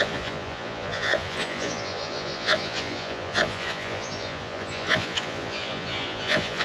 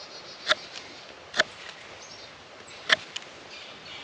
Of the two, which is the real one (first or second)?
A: second